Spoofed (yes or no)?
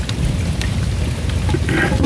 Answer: no